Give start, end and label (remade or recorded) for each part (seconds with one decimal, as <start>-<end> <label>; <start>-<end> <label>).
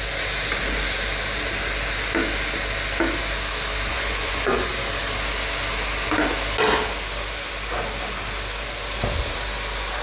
0.0-3.9 recorded; 3.9-4.7 remade; 4.7-10.0 recorded